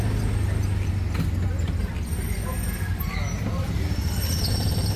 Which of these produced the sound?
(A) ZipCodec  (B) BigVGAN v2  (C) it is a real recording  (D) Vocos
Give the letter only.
C